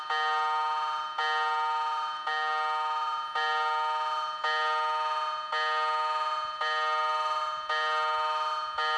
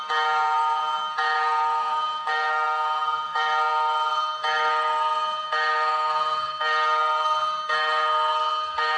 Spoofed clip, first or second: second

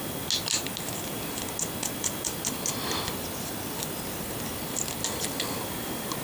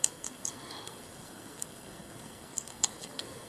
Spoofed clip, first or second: second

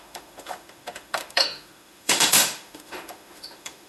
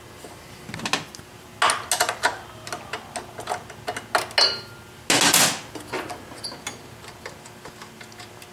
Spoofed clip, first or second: first